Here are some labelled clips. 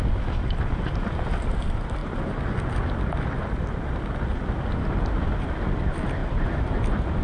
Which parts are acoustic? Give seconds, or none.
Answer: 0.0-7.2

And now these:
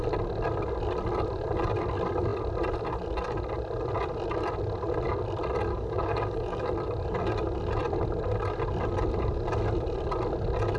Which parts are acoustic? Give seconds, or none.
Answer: 0.0-5.7; 6.7-10.8

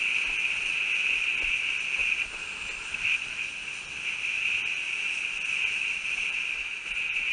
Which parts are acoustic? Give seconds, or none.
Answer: 0.0-7.3

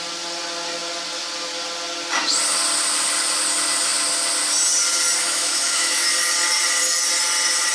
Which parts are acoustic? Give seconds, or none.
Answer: 0.0-5.2; 6.1-7.7

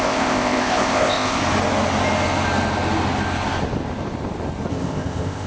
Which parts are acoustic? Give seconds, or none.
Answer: 1.4-4.7